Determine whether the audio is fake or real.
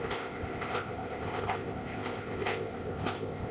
fake